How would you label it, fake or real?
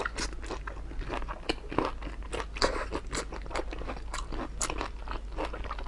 real